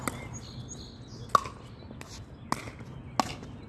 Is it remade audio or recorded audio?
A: recorded